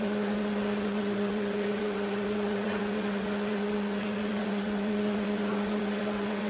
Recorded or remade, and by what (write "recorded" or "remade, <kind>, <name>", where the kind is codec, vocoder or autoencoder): remade, vocoder, WaveNeXt